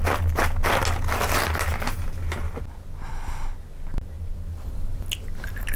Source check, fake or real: real